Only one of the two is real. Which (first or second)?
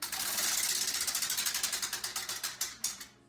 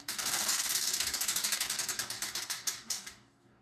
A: first